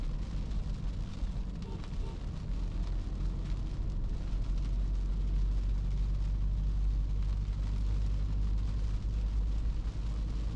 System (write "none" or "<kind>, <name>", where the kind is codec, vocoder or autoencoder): none